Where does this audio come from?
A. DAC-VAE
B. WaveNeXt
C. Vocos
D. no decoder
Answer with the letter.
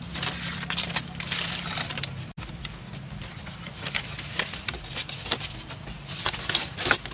D